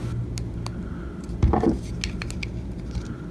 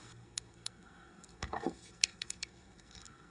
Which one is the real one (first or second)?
first